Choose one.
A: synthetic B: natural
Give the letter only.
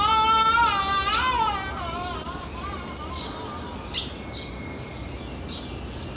B